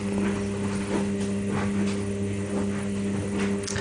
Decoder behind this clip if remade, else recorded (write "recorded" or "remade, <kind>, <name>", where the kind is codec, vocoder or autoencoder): recorded